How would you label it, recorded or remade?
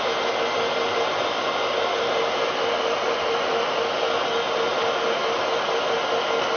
recorded